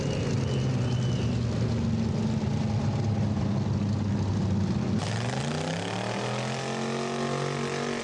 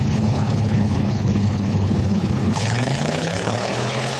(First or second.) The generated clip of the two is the second